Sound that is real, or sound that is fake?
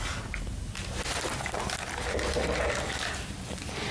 real